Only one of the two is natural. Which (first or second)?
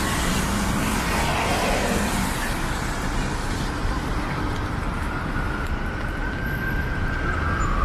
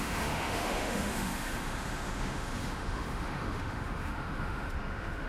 first